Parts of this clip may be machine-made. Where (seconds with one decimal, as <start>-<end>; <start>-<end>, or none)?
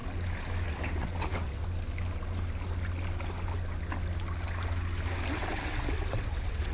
0.7-1.6; 5.3-6.7